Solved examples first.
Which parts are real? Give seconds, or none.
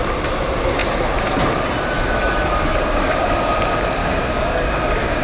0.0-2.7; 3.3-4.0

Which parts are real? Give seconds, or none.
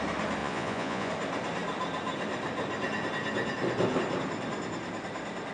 0.0-0.4; 1.1-5.5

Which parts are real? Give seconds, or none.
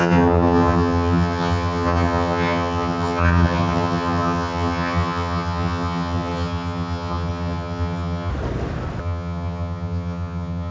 8.3-9.0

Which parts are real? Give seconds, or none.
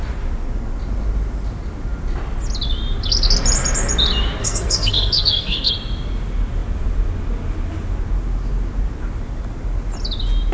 0.0-4.4; 5.7-10.5